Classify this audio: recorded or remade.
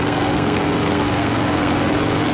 remade